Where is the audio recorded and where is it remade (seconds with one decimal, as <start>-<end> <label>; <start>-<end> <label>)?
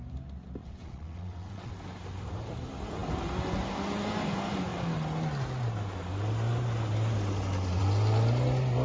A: 0.0-0.6 recorded; 0.6-1.7 remade; 1.7-8.8 recorded